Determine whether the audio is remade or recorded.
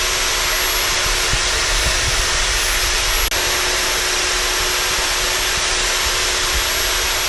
recorded